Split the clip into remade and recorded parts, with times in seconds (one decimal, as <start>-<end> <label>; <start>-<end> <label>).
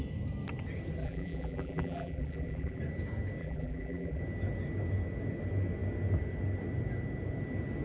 0.0-1.0 recorded; 1.0-2.8 remade; 2.8-3.4 recorded; 3.4-4.2 remade; 4.2-7.8 recorded